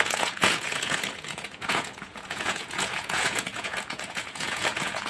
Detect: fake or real fake